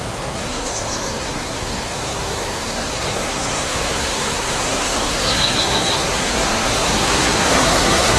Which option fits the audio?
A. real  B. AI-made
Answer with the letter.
B